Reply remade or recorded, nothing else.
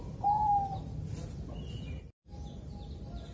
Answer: recorded